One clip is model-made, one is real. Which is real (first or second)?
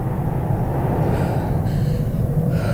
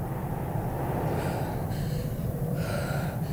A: first